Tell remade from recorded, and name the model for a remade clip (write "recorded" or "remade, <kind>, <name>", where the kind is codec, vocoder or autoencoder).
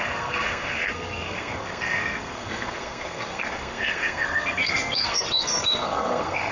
remade, codec, SNAC